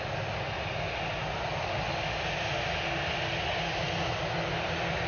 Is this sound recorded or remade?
recorded